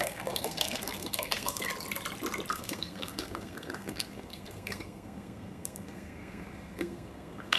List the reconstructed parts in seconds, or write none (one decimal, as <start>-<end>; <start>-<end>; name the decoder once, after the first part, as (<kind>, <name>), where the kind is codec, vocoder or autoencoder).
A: 0.0-1.7 (codec, SNAC); 2.5-7.6